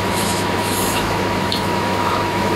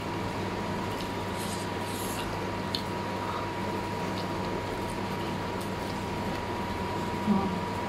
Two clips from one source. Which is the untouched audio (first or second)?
second